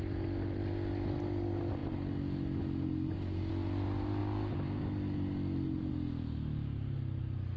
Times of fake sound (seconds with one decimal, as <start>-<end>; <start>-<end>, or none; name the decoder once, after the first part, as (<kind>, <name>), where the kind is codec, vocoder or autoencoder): none